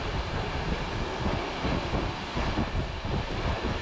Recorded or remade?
recorded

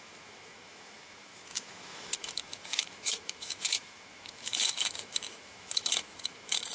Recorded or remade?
remade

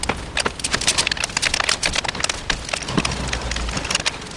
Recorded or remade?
recorded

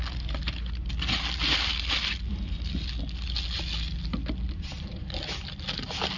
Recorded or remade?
recorded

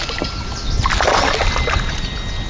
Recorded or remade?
recorded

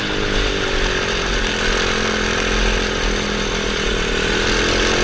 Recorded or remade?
recorded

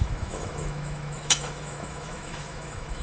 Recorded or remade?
remade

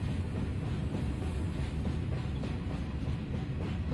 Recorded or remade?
recorded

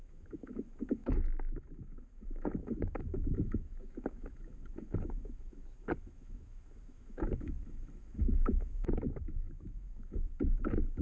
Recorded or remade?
remade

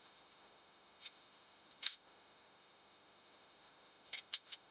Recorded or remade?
remade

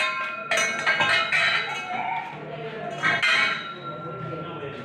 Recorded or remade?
recorded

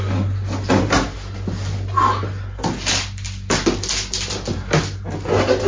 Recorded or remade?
recorded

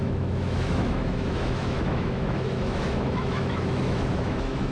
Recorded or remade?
remade